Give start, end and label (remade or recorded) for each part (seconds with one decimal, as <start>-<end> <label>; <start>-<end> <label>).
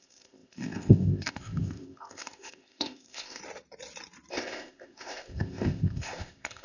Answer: 0.0-3.4 remade; 3.4-4.3 recorded; 4.3-6.6 remade